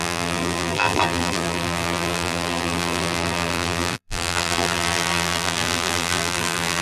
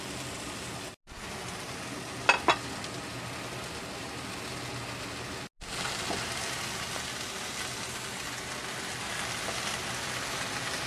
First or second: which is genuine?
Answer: second